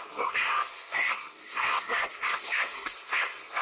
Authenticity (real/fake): fake